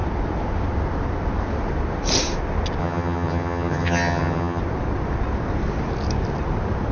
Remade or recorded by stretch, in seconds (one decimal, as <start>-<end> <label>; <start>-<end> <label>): 0.0-2.8 recorded; 2.8-4.6 remade; 4.6-6.9 recorded